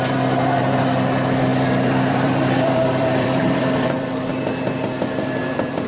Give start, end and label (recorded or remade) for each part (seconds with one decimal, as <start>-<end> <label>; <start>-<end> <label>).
0.0-4.3 remade; 4.3-5.4 recorded; 5.4-5.9 remade